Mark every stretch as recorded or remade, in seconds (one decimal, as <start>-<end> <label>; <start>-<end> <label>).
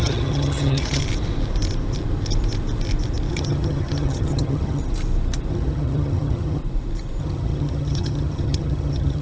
0.0-1.0 remade; 1.0-3.3 recorded; 3.3-4.8 remade; 4.8-5.5 recorded; 5.5-6.6 remade; 6.6-7.2 recorded; 7.2-9.2 remade